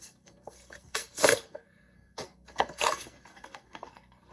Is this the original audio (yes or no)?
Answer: no